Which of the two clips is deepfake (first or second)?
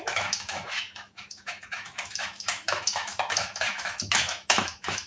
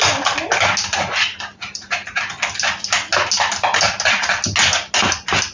first